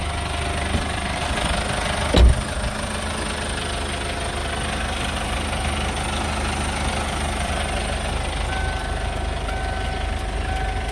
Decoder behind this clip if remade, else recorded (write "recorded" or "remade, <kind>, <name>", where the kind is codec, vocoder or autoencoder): recorded